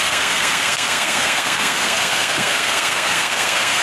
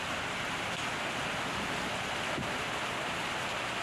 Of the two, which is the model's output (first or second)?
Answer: first